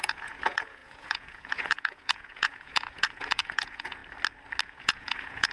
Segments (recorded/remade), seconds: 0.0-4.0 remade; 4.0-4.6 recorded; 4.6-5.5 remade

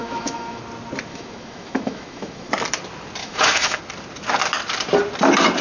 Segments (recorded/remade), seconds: 0.0-0.6 remade; 0.6-1.1 recorded; 1.1-2.5 remade; 2.5-3.2 recorded; 3.2-3.8 remade; 3.8-5.6 recorded

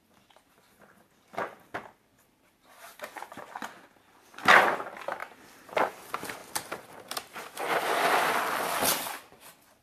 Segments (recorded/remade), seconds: 0.0-5.2 recorded; 5.2-5.9 remade; 5.9-6.4 recorded; 6.4-7.8 remade; 7.8-9.8 recorded

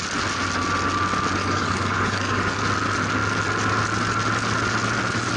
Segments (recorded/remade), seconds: 0.0-1.4 recorded; 1.4-2.6 remade; 2.6-5.4 recorded

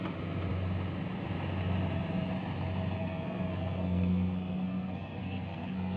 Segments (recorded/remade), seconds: 0.0-3.0 recorded; 3.0-6.0 remade

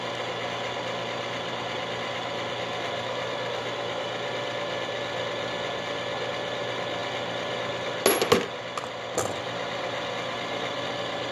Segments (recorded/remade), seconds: 0.0-11.3 recorded